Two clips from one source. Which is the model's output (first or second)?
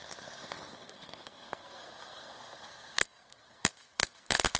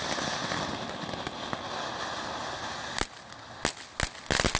first